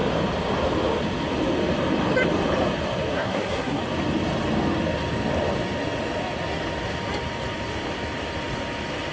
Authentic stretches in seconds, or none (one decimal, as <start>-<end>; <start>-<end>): 0.0-3.1; 3.8-9.1